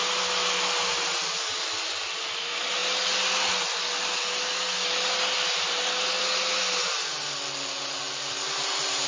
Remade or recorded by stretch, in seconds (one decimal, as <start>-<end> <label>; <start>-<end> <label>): 0.0-9.1 recorded